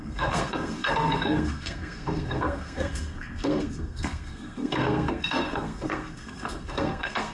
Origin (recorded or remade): remade